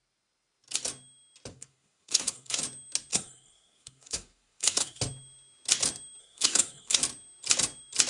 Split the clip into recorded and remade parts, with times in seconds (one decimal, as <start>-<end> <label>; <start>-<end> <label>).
0.0-1.5 recorded; 1.5-2.6 remade; 2.6-3.1 recorded; 3.1-5.0 remade; 5.0-6.2 recorded; 6.2-7.0 remade; 7.0-8.1 recorded